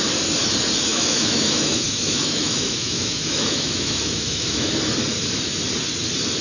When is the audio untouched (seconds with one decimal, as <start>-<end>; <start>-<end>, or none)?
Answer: 0.0-0.9; 4.7-6.4